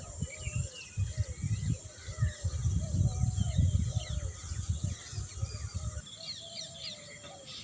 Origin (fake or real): fake